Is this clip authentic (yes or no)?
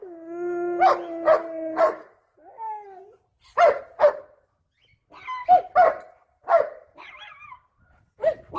yes